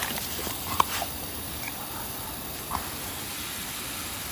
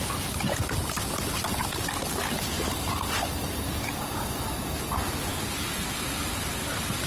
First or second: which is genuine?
second